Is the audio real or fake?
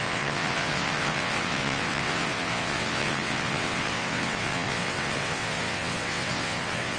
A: fake